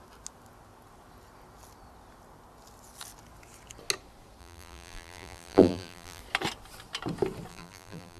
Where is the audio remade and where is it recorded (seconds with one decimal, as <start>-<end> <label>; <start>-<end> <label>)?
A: 0.0-4.4 recorded; 4.4-6.2 remade; 6.2-7.5 recorded; 7.5-8.2 remade